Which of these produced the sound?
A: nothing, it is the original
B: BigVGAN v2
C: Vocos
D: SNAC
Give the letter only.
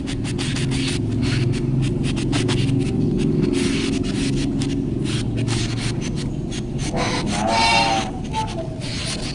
A